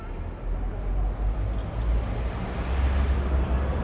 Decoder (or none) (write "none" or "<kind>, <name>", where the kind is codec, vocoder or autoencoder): none